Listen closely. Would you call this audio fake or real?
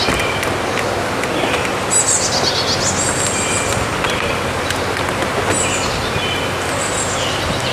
real